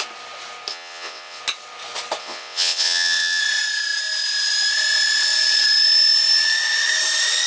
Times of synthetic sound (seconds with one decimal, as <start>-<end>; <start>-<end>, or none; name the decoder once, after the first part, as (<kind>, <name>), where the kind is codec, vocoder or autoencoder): 0.7-1.4 (vocoder, WaveNeXt); 2.2-3.4